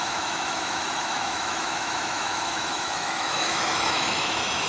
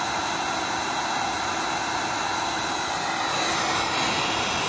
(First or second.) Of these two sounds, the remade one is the first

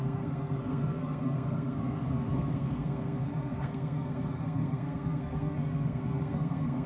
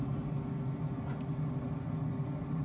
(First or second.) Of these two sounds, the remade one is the first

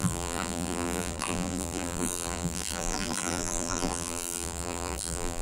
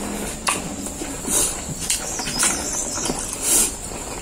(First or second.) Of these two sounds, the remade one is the first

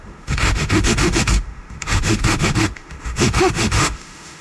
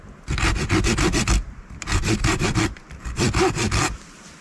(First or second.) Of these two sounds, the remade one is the first